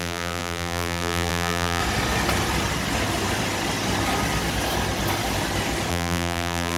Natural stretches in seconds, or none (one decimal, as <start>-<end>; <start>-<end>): 1.8-5.9